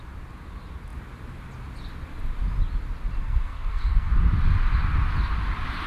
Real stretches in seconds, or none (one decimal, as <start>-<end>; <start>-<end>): 0.0-3.2; 4.1-5.9